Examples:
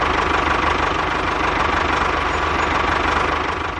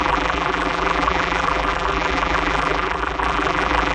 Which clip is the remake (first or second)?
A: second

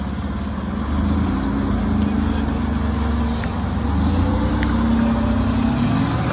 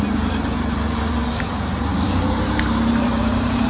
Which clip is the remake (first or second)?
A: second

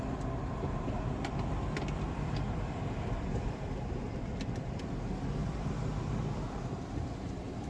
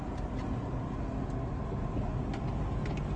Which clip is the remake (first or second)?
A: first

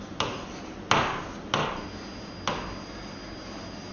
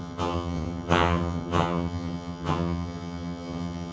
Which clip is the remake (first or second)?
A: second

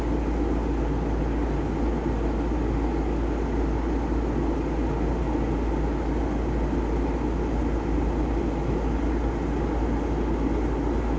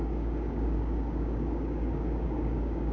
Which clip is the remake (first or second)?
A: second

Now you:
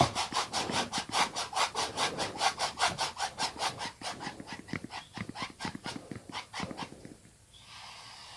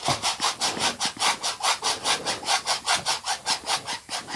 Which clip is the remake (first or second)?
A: first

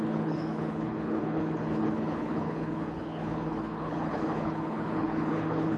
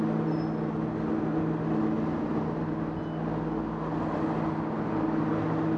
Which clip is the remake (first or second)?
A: first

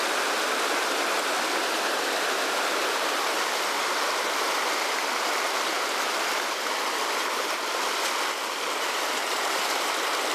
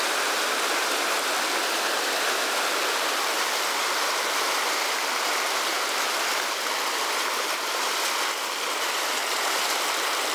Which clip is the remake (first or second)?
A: first